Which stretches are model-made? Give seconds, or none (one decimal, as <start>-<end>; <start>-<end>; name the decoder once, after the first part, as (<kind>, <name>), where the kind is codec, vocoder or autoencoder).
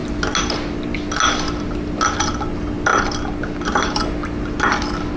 none